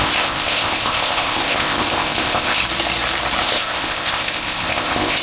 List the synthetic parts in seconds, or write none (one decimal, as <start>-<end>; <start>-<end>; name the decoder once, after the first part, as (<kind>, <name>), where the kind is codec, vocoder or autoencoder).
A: 0.0-2.6 (codec, ZipCodec); 3.4-5.2